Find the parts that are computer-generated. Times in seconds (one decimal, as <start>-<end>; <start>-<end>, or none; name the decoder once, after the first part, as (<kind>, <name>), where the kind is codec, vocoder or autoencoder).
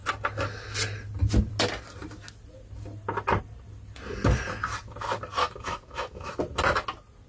5.4-6.3 (autoencoder, DAC-VAE)